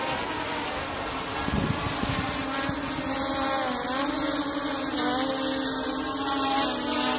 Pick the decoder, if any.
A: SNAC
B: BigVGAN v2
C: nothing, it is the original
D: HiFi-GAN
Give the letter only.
C